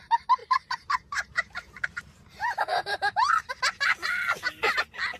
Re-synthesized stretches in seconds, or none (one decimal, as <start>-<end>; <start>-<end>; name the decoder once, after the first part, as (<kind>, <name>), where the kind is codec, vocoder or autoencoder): 0.4-3.5 (vocoder, BigVGAN v2)